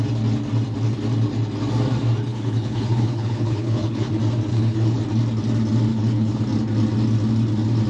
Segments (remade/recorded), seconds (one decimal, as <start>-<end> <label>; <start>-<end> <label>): 0.0-2.3 recorded; 2.3-4.1 remade; 4.1-4.5 recorded; 4.5-5.0 remade; 5.0-5.9 recorded; 5.9-6.4 remade; 6.4-7.9 recorded